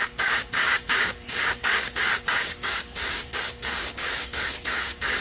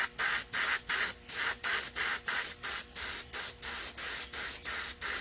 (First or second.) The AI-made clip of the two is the first